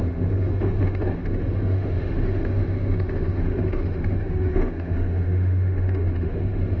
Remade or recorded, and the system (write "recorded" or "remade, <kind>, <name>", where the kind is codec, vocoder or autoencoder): remade, autoencoder, DAC-VAE